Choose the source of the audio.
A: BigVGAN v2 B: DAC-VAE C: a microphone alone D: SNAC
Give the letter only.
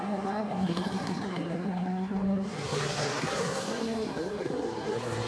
D